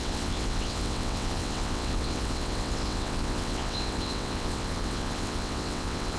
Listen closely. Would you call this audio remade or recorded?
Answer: remade